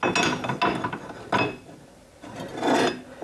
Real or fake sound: real